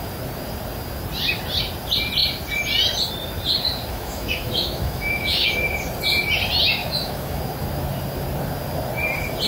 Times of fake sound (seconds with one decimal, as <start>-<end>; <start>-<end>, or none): 3.9-5.5; 6.8-7.4

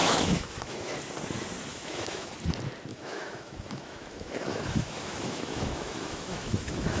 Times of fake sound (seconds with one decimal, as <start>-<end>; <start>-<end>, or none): 0.0-0.9; 1.7-2.3; 2.9-7.0